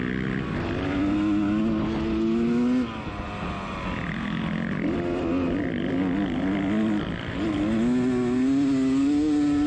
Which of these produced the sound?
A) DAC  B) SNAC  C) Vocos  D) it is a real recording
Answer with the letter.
D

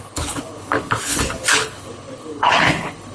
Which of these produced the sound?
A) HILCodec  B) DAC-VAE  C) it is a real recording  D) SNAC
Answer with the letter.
A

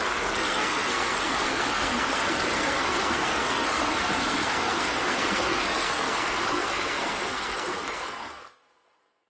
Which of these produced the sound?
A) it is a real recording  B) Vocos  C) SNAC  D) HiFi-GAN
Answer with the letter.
C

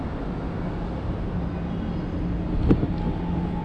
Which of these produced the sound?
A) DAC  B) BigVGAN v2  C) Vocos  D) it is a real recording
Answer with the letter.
D